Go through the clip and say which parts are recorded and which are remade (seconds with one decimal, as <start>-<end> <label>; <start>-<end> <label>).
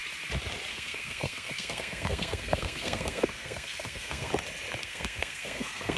0.0-0.7 recorded; 0.7-4.3 remade; 4.3-4.8 recorded; 4.8-6.0 remade